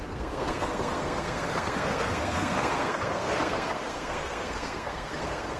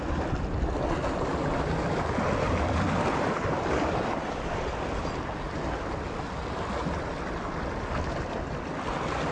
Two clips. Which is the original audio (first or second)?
second